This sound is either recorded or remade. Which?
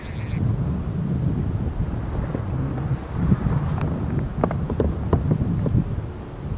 recorded